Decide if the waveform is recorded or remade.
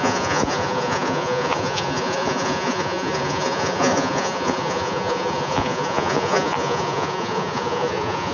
remade